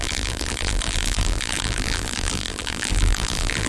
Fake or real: fake